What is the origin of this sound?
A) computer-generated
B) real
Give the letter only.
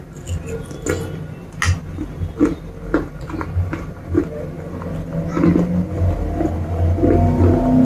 B